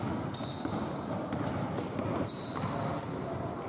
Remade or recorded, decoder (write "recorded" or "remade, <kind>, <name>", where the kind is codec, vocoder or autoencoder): recorded